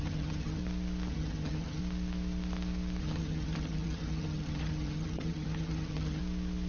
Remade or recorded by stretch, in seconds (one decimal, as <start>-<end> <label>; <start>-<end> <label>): 0.0-0.6 remade; 0.6-1.1 recorded; 1.1-1.8 remade; 1.8-3.0 recorded; 3.0-6.2 remade; 6.2-6.7 recorded